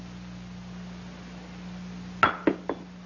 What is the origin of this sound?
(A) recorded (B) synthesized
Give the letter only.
A